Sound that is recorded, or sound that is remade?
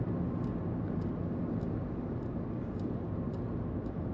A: recorded